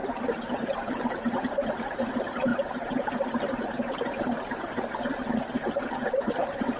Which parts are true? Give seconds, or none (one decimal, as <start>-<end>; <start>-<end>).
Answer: 1.1-2.5; 3.1-6.8